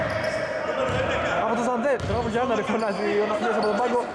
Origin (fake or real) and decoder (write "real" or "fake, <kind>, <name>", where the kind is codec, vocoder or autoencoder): real